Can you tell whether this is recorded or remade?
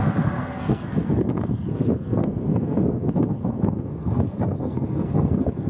remade